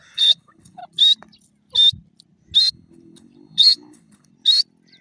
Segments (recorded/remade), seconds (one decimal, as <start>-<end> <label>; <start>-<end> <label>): 0.0-0.8 remade; 0.8-2.7 recorded; 2.7-4.3 remade; 4.3-5.0 recorded

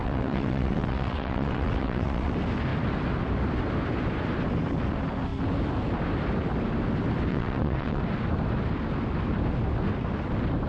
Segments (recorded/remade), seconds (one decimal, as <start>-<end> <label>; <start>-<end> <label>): 0.0-2.3 remade; 2.3-7.3 recorded; 7.3-8.0 remade; 8.0-10.7 recorded